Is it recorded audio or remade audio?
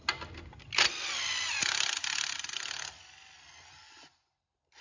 recorded